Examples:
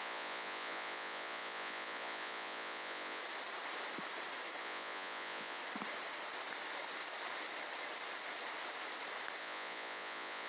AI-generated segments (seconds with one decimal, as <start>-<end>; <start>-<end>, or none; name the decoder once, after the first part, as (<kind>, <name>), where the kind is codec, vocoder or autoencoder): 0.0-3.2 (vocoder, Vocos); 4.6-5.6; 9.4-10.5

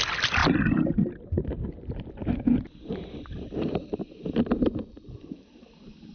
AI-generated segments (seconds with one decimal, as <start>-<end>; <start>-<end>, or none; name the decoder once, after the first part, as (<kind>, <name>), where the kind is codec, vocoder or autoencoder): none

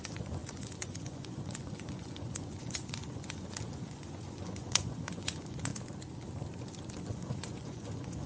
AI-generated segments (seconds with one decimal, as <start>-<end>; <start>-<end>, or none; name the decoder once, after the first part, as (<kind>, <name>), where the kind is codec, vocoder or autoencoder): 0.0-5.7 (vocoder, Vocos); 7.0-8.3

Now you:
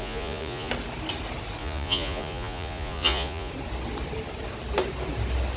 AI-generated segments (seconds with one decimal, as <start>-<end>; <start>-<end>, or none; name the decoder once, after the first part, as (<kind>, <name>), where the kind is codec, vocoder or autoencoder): 0.0-0.7 (vocoder, Vocos); 1.6-3.5

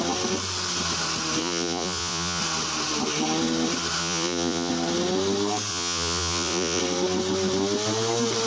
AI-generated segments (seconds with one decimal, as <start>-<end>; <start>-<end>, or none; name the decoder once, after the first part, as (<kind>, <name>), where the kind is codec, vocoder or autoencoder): 1.4-2.4 (vocoder, Vocos); 4.0-4.7; 5.7-6.8

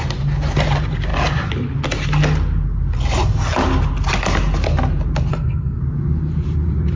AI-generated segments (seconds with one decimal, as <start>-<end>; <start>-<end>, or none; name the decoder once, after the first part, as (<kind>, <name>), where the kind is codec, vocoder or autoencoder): 5.3-5.8 (codec, SNAC)

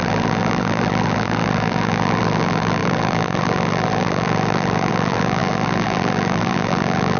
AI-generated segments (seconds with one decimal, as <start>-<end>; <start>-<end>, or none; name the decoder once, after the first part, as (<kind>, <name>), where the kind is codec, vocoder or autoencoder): 0.0-7.2 (vocoder, BigVGAN v2)

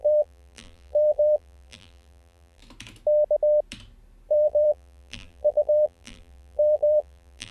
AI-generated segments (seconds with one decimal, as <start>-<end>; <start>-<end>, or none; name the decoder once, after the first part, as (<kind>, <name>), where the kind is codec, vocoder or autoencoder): 0.0-2.6 (vocoder, BigVGAN v2); 4.3-7.5